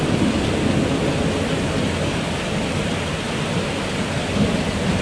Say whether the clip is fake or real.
real